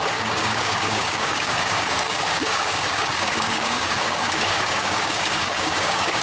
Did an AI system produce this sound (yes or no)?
yes